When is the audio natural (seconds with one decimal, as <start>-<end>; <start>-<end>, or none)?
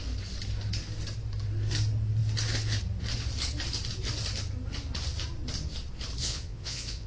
0.0-6.2